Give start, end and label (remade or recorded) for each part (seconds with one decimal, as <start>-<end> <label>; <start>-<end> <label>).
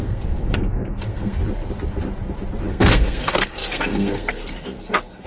0.0-1.4 remade; 1.4-2.7 recorded; 2.7-5.3 remade